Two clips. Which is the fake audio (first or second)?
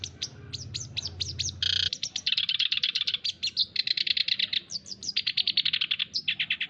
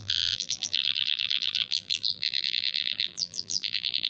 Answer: second